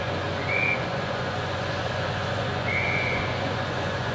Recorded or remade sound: remade